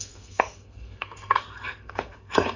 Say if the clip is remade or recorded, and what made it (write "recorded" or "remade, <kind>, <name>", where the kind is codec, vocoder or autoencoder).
remade, codec, SNAC